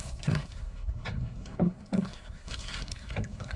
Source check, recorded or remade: remade